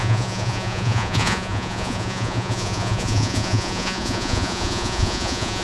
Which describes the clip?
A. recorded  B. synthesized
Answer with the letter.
B